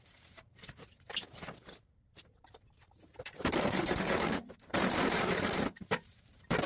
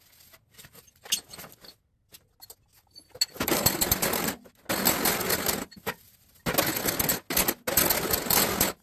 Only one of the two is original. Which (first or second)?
second